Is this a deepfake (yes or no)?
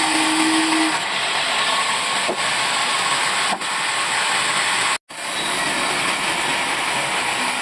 no